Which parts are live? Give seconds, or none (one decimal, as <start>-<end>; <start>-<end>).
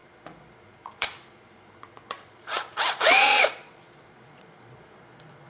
none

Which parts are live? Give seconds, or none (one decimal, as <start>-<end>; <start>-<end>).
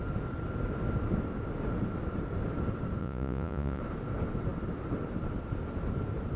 0.0-3.0; 3.8-6.4